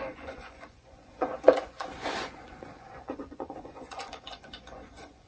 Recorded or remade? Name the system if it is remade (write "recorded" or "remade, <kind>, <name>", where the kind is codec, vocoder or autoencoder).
remade, vocoder, Vocos